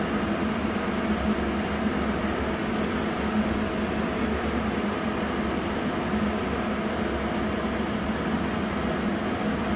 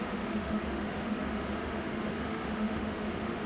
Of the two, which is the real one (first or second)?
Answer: first